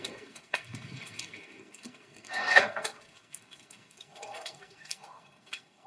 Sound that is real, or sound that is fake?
fake